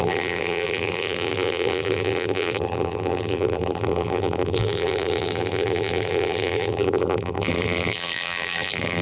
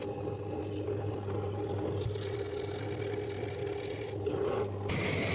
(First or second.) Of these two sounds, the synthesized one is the first